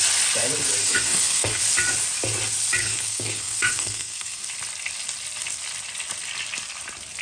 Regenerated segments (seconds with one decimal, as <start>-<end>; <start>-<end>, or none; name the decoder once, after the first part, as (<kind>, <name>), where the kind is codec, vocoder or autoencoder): 0.8-1.6 (codec, SNAC); 2.8-4.4

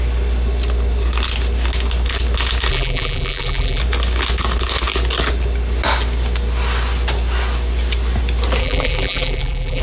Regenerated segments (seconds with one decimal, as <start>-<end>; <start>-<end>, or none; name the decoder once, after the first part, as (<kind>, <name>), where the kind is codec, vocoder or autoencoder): 2.7-3.8 (vocoder, BigVGAN v2); 8.6-9.8

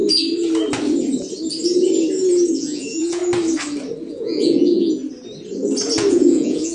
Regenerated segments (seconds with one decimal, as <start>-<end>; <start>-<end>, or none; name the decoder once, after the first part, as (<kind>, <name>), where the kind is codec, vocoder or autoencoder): 2.5-3.2 (vocoder, Vocos); 4.1-5.0; 6.1-6.7